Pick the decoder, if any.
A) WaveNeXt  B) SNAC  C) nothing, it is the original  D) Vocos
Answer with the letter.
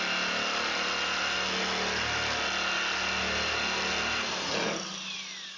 C